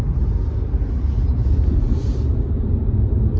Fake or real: real